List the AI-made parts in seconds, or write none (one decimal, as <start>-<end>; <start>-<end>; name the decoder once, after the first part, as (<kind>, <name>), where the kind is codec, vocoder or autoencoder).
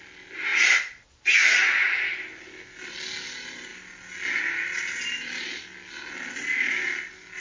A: none